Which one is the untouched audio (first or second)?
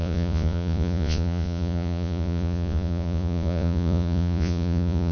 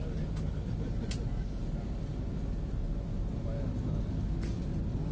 second